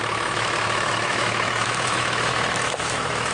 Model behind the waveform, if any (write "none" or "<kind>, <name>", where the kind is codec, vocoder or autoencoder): autoencoder, DAC-VAE